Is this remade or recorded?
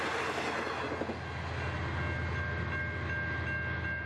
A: recorded